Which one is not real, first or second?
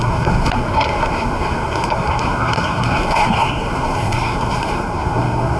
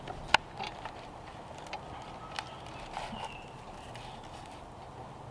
first